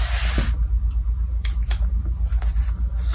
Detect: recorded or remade recorded